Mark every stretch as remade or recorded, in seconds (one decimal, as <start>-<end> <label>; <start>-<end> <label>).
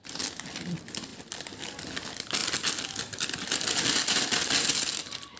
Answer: 0.0-5.4 recorded